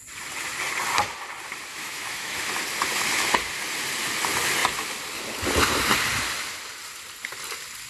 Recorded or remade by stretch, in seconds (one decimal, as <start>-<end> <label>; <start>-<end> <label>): 0.0-1.7 recorded; 1.7-2.4 remade; 2.4-7.9 recorded